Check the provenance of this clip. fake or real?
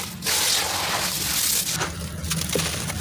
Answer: real